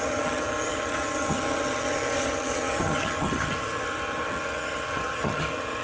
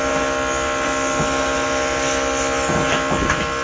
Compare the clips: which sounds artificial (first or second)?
first